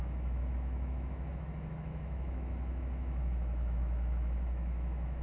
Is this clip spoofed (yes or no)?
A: yes